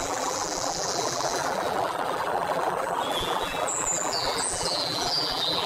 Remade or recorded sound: remade